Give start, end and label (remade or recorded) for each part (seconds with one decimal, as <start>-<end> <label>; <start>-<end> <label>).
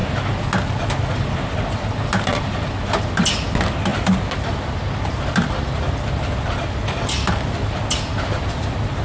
0.0-9.0 recorded